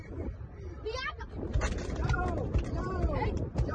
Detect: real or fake real